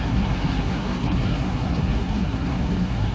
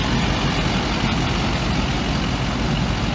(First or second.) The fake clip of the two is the first